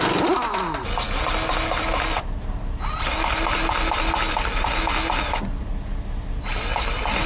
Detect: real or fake real